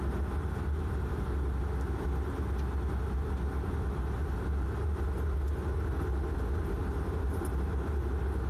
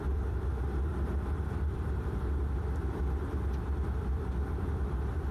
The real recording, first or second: first